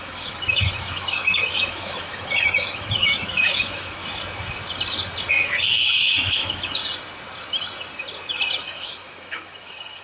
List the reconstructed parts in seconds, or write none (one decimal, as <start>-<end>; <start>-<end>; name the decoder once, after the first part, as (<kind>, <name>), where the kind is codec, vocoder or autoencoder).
0.0-4.0 (autoencoder, DAC-VAE); 5.3-6.8; 8.6-10.0